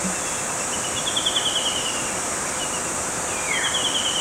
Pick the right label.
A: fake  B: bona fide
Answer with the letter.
B